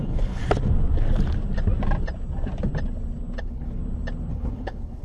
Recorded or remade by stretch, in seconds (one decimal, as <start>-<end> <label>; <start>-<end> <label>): 0.0-0.4 remade; 0.4-3.4 recorded; 3.4-3.8 remade; 3.8-4.3 recorded; 4.3-5.0 remade